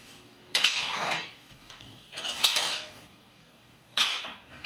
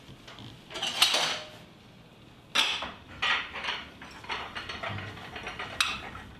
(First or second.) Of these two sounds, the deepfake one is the first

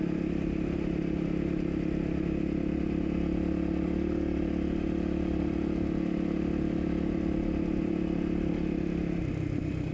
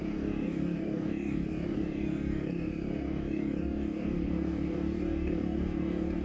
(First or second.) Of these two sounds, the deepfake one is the second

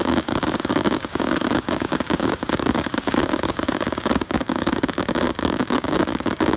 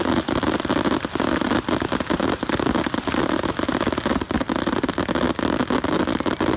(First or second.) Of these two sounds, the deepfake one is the first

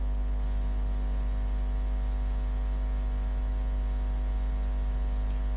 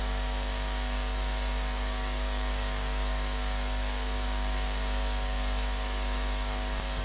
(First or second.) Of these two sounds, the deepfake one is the second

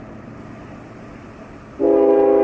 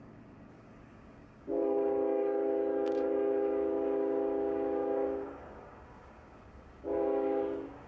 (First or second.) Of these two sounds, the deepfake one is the second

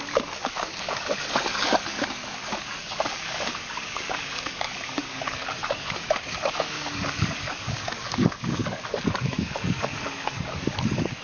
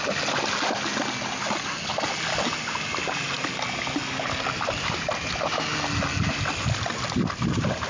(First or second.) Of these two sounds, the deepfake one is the first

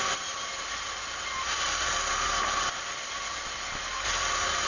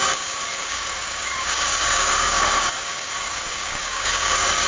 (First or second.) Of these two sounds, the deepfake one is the second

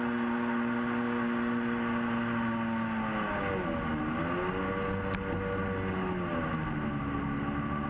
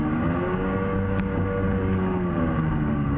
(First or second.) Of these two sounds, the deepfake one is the second